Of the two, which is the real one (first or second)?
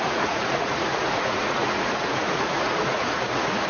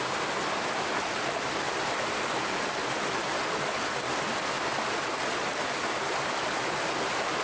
second